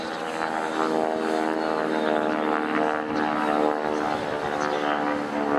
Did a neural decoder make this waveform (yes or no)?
no